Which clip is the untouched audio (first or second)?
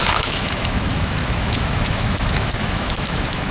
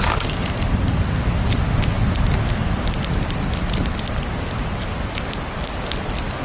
second